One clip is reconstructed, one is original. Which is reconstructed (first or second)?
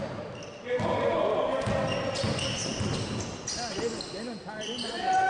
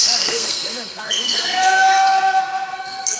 second